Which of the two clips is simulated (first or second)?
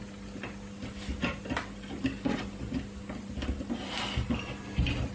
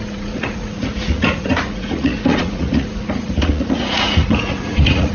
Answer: second